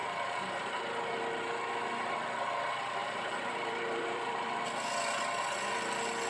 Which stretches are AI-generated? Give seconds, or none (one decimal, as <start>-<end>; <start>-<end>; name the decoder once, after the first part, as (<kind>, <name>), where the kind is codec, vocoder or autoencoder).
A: 0.0-0.8 (vocoder, BigVGAN v2); 3.0-4.6